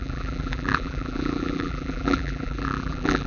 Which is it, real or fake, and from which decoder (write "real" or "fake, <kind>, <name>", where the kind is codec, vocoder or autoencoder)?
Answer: fake, vocoder, BigVGAN v2